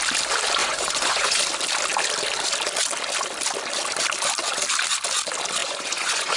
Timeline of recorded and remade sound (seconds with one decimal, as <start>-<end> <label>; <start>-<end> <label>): 0.0-0.6 recorded; 0.6-1.4 remade; 1.4-5.6 recorded; 5.6-6.4 remade